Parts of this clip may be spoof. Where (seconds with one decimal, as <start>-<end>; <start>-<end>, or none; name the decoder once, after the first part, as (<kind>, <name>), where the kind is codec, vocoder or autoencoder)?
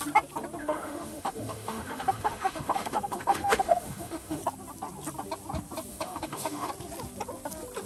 0.6-4.4 (autoencoder, DAC-VAE); 5.9-6.7